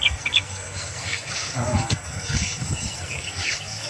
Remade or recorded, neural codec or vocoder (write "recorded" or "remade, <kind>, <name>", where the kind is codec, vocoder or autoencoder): remade, codec, SNAC